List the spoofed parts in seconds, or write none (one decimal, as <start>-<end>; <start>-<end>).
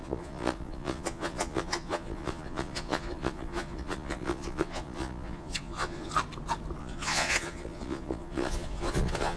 0.0-6.1; 6.8-9.4